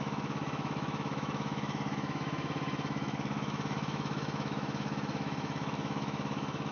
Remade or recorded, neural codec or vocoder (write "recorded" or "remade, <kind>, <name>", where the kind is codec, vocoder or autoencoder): remade, autoencoder, DAC-VAE